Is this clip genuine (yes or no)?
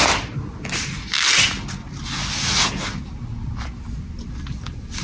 yes